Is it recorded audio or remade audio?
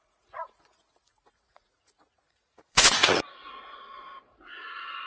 remade